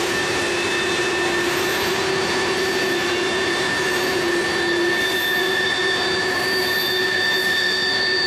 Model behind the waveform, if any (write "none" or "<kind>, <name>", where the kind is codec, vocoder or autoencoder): none